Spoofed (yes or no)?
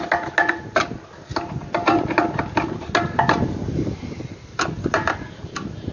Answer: no